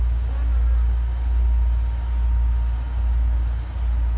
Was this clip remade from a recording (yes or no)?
no